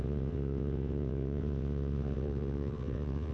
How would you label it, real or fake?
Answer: fake